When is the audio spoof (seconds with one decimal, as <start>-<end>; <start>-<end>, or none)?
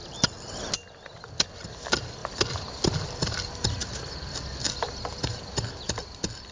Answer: none